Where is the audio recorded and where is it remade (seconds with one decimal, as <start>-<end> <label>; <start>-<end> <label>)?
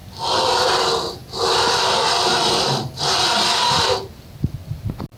0.0-0.7 remade; 0.7-1.2 recorded; 1.2-4.3 remade; 4.3-5.2 recorded